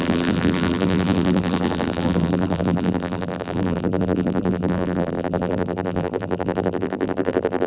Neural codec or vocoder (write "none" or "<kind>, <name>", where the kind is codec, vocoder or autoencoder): vocoder, BigVGAN v2